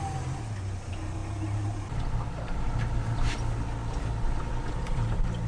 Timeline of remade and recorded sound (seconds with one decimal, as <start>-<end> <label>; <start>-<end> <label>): 0.0-5.5 recorded